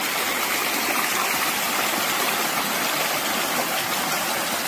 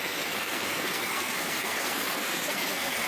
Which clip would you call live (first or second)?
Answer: first